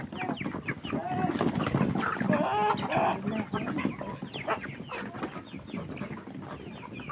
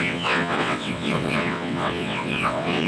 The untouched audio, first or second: first